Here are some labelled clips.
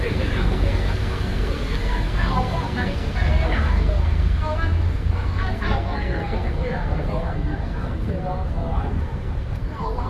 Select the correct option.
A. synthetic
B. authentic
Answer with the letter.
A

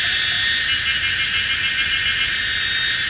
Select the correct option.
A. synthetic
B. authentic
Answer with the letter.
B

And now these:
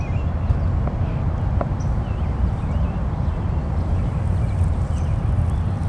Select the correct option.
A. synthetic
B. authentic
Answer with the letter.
B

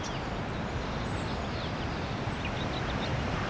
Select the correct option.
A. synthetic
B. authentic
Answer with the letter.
B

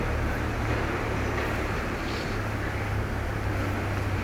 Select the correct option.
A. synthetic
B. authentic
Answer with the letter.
B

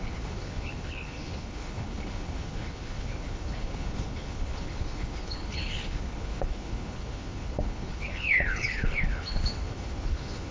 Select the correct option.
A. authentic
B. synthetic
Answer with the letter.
B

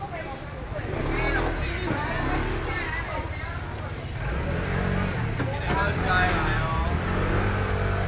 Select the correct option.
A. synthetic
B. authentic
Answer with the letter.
B